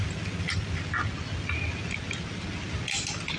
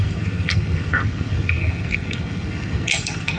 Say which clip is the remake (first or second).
second